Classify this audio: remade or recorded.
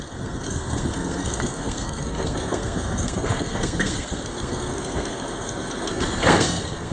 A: remade